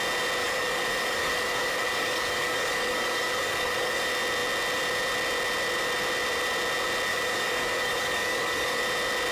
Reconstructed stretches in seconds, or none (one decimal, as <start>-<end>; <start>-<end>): 0.4-4.0; 7.1-8.8